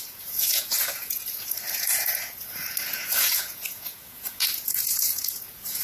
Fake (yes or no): yes